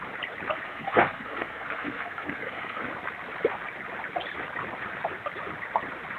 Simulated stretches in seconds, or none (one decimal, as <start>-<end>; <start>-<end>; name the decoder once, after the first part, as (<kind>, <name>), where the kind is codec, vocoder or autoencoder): 0.7-2.8 (codec, SNAC)